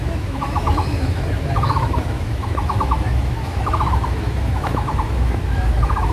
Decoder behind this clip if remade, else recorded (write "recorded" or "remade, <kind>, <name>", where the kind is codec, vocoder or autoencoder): remade, autoencoder, DAC-VAE